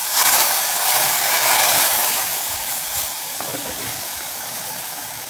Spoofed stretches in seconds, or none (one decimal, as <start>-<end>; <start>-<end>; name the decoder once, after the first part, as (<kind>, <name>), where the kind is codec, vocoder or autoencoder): 0.0-5.3 (codec, DAC)